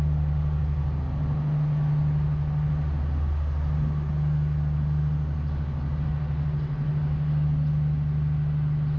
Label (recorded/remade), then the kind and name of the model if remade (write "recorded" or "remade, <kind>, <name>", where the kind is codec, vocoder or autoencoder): recorded